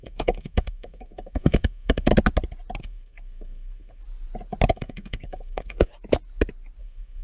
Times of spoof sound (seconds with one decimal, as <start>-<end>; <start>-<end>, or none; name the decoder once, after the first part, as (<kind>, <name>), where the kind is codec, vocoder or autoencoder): 0.0-2.1 (codec, SNAC); 2.8-4.0; 4.7-5.9; 6.8-7.2

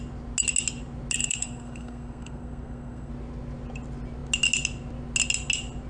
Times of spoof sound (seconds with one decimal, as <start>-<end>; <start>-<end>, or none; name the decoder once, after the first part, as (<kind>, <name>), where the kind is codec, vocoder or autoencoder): 1.2-3.1 (codec, SNAC)

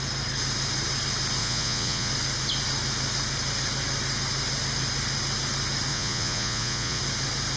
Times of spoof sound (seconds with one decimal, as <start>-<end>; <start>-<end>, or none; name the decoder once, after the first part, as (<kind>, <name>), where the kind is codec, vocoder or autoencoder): 1.4-2.1 (vocoder, Vocos); 5.9-7.0